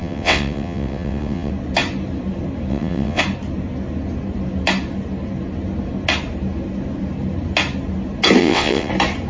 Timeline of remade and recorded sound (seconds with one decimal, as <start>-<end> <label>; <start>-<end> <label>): 0.0-1.5 remade; 1.5-2.7 recorded; 2.7-3.2 remade; 3.2-8.4 recorded; 8.4-8.9 remade; 8.9-9.3 recorded